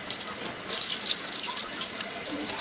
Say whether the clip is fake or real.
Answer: real